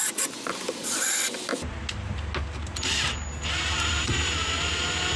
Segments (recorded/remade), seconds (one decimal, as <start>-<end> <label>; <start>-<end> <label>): 0.0-5.2 recorded

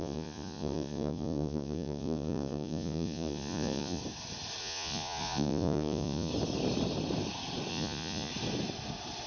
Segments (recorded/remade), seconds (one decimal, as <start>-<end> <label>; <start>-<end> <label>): 0.0-4.0 remade; 4.0-4.6 recorded; 4.6-6.3 remade; 6.3-7.7 recorded; 7.7-8.3 remade; 8.3-9.3 recorded

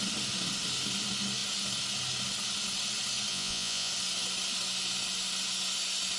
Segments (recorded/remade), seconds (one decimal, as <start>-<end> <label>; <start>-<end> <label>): 0.0-3.3 recorded; 3.3-3.9 remade; 3.9-6.2 recorded

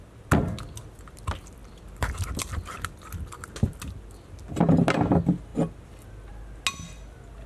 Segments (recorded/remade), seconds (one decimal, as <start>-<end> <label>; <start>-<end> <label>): 0.0-7.5 recorded

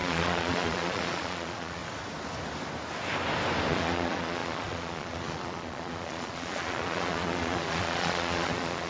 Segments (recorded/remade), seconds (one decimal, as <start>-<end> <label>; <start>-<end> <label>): 0.0-1.8 remade; 1.8-3.7 recorded; 3.7-8.9 remade

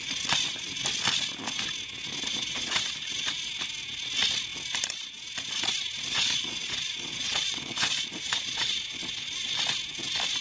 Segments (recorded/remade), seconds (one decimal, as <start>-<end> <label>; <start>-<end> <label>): 0.0-2.3 recorded; 2.3-3.5 remade; 3.5-6.1 recorded; 6.1-9.5 remade; 9.5-10.4 recorded

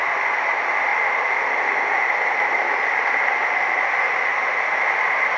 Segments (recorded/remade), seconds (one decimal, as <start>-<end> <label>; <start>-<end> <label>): 0.0-5.4 recorded